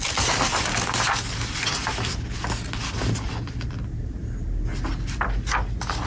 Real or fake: real